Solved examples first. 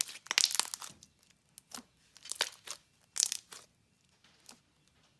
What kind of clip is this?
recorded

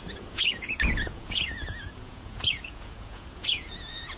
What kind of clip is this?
remade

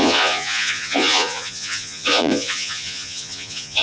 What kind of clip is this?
remade